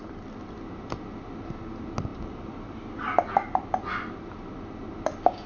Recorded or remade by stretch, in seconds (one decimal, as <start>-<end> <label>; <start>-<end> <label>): 0.0-5.5 recorded